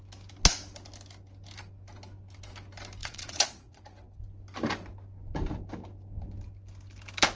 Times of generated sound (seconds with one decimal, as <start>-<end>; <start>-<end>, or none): 3.0-3.8